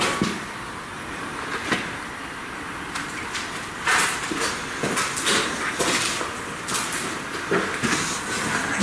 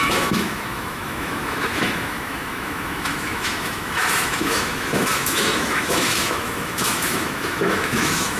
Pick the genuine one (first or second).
first